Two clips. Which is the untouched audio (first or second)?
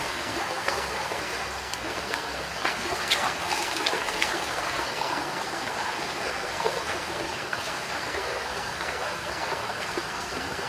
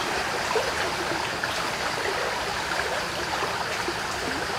second